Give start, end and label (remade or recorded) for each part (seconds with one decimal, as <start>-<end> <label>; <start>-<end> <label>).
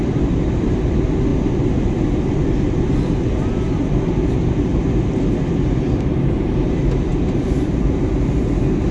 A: 0.0-8.9 recorded